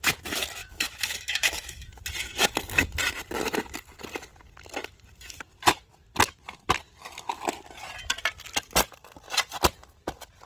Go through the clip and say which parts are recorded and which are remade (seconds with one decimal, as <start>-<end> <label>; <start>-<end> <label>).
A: 0.0-0.6 recorded; 0.6-2.0 remade; 2.0-10.5 recorded